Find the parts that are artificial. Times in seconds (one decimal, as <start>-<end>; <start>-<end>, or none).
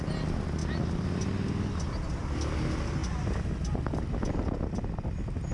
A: none